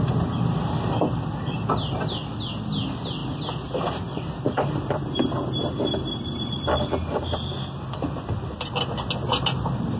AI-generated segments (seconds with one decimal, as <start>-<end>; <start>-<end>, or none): none

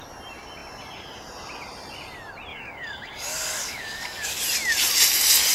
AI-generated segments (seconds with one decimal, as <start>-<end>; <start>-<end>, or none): 2.5-4.4

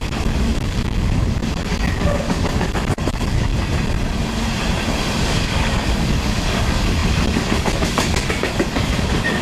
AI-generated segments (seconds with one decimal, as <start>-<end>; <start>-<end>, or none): 0.0-3.5; 5.2-9.4

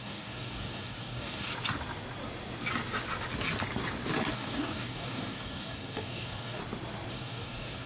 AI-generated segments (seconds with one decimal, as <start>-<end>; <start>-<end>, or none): 0.0-1.5; 4.3-6.6; 7.1-7.9

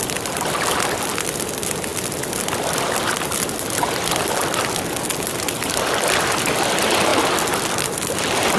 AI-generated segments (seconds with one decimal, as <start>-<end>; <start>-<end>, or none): none

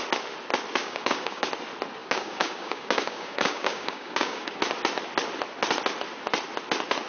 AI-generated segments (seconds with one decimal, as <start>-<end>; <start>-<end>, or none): 0.8-1.5; 2.0-4.6